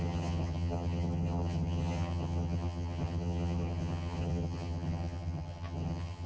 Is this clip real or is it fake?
fake